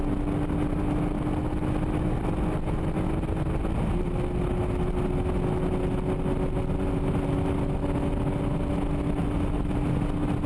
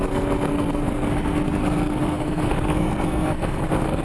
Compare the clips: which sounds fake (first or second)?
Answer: second